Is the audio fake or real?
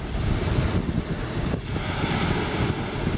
real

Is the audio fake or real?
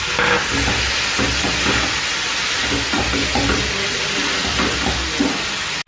real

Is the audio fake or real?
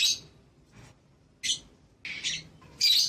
real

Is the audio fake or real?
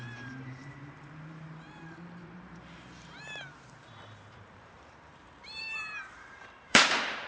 fake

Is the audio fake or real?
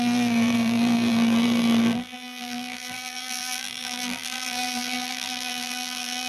fake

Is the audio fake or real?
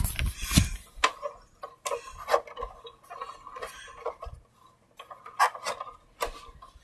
real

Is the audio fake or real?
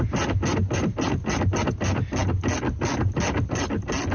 real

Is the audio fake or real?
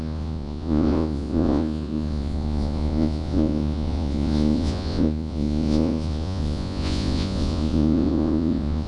fake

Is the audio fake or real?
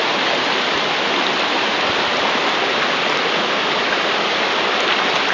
real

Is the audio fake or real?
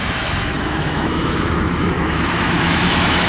fake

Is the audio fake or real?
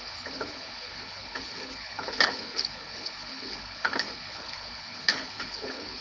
fake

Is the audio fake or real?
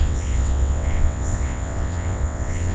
fake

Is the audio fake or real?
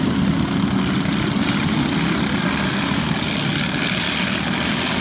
real